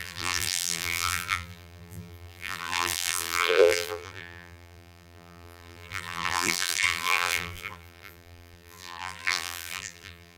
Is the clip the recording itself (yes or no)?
no